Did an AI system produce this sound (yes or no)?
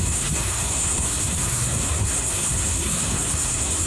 yes